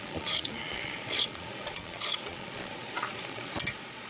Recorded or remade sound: remade